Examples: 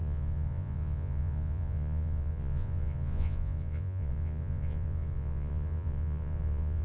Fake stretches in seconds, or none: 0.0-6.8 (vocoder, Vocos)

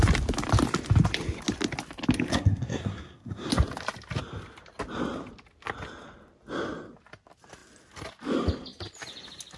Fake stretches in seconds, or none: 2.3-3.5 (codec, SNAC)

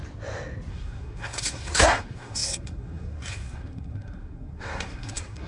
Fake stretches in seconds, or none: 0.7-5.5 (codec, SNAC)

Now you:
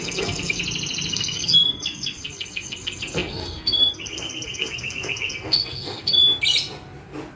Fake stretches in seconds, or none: 0.0-0.6 (codec, SNAC); 1.1-6.2

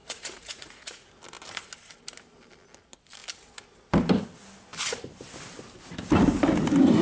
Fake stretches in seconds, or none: 0.0-1.1 (vocoder, Vocos)

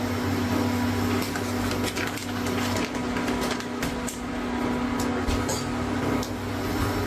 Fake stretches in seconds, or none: none

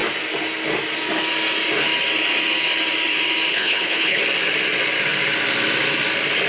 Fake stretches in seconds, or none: 3.5-4.2 (codec, HILCodec)